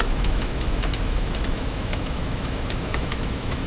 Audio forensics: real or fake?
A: fake